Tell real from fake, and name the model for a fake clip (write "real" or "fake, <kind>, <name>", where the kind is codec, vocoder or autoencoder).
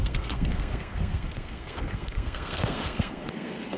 fake, codec, SNAC